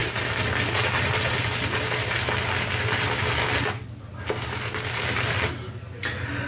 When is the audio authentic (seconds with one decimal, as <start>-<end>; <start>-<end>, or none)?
none